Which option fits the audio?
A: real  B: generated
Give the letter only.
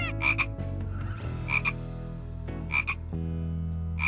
A